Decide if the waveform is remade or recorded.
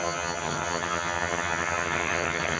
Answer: remade